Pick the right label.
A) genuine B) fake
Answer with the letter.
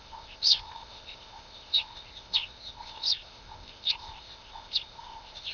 B